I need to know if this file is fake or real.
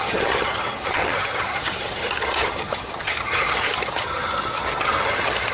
fake